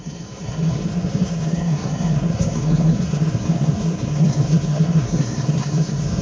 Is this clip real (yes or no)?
no